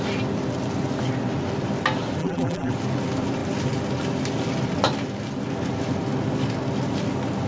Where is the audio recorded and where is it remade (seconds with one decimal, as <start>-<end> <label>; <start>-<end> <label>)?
0.0-2.2 recorded; 2.2-2.7 remade; 2.7-7.5 recorded